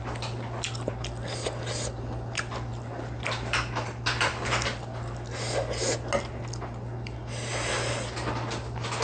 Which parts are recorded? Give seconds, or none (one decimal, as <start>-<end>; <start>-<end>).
0.0-9.0